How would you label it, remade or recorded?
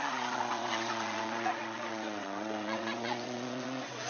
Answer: remade